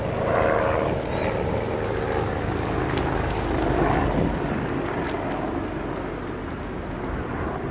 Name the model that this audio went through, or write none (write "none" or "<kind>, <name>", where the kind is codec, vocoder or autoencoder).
none